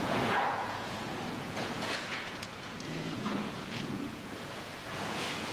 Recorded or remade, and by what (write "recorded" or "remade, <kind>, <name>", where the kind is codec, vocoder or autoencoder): remade, vocoder, Vocos